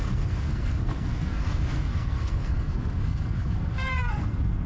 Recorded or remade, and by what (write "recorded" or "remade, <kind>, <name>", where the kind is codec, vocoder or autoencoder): remade, codec, SNAC